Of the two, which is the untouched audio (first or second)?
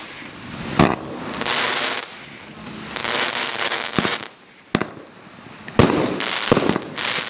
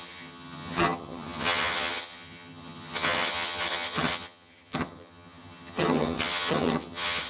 first